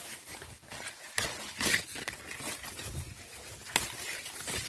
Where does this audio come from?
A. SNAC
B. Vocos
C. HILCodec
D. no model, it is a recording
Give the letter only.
D